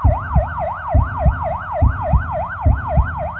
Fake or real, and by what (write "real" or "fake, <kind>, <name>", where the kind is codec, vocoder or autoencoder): fake, autoencoder, DAC-VAE